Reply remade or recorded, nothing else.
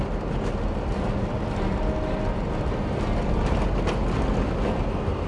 recorded